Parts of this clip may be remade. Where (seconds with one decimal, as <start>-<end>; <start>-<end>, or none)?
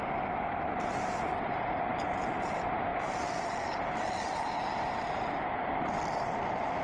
1.9-2.5; 2.9-3.6